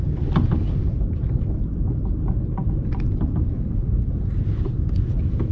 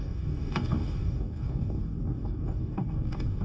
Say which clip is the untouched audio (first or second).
first